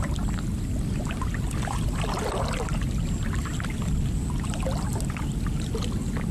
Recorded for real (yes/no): yes